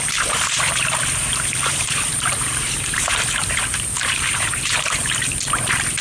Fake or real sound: fake